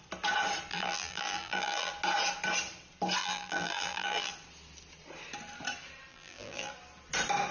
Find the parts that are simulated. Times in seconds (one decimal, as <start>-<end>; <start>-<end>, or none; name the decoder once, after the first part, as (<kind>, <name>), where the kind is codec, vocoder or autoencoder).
0.7-1.9 (vocoder, BigVGAN v2); 3.2-4.3; 6.1-6.7